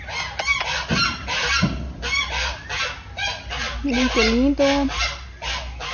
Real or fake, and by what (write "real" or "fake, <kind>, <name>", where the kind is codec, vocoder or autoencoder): real